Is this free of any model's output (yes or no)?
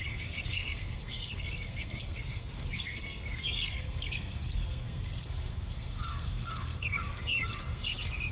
no